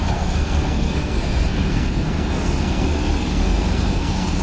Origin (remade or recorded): remade